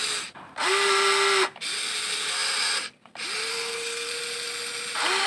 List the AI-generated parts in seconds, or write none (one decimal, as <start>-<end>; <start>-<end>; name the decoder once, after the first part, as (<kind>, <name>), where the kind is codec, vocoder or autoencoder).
3.5-4.1 (codec, SNAC)